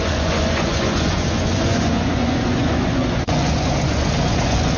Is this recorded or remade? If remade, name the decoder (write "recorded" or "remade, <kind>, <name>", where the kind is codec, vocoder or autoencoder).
remade, vocoder, Vocos